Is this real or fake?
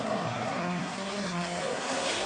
fake